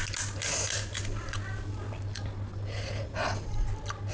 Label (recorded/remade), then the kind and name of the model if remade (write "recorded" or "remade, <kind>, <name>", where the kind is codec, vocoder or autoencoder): recorded